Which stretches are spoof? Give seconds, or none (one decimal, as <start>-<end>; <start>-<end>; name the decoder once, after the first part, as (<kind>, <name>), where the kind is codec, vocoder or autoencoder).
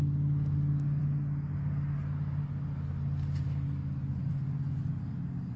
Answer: none